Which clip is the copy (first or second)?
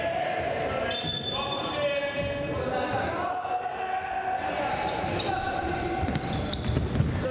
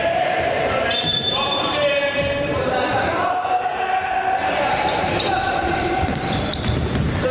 second